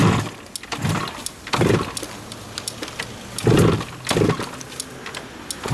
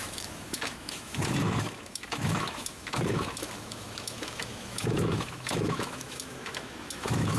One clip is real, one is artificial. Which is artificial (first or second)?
second